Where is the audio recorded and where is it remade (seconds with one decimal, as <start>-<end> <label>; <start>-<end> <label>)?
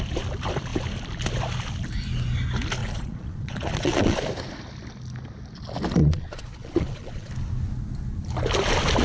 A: 0.0-2.8 recorded; 2.8-4.2 remade; 4.2-6.0 recorded; 6.0-7.3 remade; 7.3-9.0 recorded